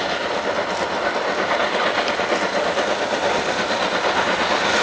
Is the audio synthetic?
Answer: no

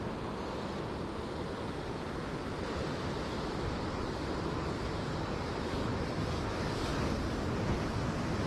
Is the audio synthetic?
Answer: no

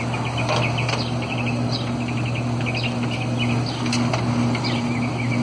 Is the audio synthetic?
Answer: no